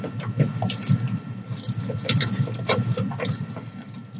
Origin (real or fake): real